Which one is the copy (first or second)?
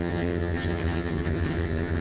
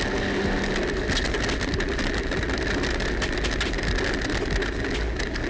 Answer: first